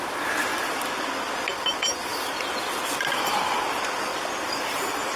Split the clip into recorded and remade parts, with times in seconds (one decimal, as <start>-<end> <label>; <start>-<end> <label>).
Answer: 0.0-5.2 recorded